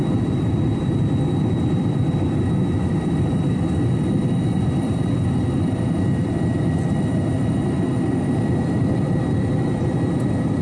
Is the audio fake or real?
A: fake